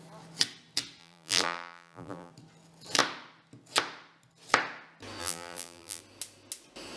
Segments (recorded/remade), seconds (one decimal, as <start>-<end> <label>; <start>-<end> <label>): 0.0-1.0 recorded; 1.0-2.3 remade; 2.3-5.2 recorded; 5.2-6.0 remade; 6.0-7.0 recorded